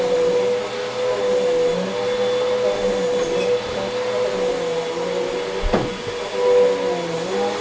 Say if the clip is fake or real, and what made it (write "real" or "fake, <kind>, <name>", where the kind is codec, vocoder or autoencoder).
real